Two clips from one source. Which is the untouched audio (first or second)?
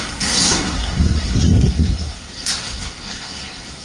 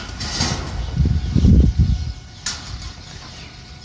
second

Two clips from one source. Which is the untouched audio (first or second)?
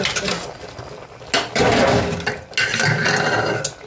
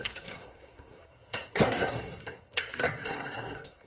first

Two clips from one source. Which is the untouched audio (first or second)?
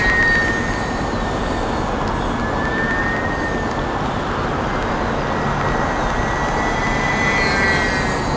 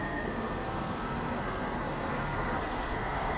first